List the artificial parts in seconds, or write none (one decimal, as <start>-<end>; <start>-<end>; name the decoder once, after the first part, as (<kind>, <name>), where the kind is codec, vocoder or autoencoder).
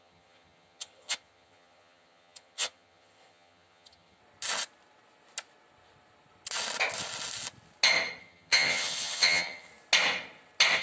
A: 0.0-4.2 (vocoder, HiFi-GAN); 8.2-9.7